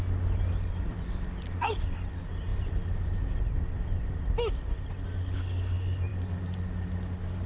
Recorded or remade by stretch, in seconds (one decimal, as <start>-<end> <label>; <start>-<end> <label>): 0.0-7.5 recorded